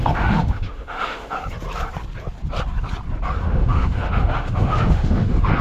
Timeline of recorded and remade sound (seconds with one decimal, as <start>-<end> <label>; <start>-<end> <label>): 0.0-1.4 remade; 1.4-3.4 recorded; 3.4-5.6 remade